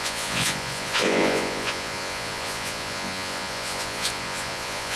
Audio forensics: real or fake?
fake